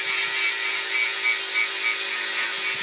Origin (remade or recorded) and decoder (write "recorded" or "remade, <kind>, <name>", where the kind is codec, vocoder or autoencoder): recorded